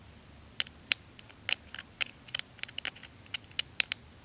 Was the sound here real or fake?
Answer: real